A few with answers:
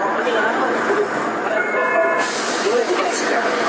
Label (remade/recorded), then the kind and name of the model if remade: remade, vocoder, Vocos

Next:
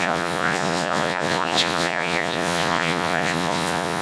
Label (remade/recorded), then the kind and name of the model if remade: remade, vocoder, Vocos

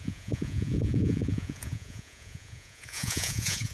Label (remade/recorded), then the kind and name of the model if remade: remade, vocoder, Vocos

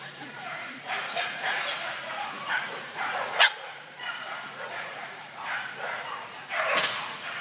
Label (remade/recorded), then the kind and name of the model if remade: remade, vocoder, Vocos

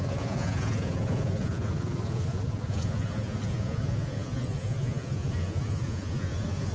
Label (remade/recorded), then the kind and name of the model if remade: remade, vocoder, Vocos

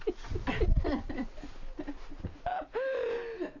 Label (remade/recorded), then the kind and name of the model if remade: recorded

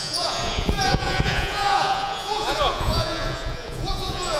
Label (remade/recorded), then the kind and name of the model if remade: remade, vocoder, Vocos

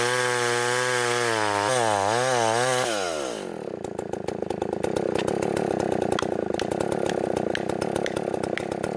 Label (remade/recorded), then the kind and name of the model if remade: recorded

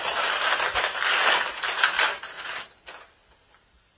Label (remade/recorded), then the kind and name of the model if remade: recorded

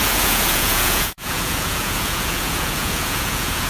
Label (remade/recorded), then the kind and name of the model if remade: remade, vocoder, Vocos